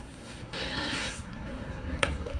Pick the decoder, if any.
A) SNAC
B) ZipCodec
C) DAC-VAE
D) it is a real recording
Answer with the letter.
A